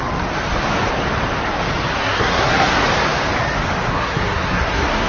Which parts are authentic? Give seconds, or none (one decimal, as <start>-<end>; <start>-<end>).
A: 0.0-2.0; 2.8-3.9